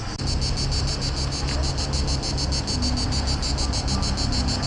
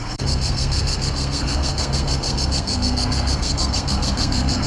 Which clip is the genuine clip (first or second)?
first